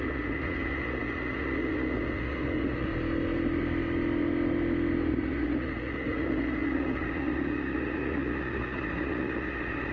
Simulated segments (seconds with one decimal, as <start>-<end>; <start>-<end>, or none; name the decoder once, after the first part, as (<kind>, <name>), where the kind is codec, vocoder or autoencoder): 0.0-2.9 (vocoder, Vocos); 5.1-9.9